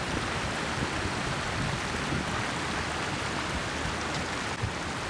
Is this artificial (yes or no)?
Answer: no